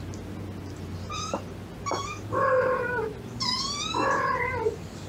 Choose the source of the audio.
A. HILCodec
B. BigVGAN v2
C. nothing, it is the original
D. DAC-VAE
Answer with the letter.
C